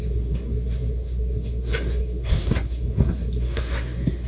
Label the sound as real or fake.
fake